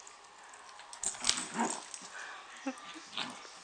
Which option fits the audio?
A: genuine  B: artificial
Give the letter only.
A